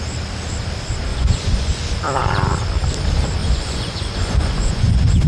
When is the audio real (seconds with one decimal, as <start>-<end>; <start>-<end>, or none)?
0.0-1.1; 1.7-3.4

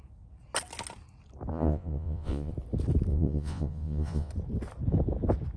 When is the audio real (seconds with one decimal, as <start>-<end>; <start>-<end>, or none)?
0.0-1.5; 2.5-3.1; 4.3-5.6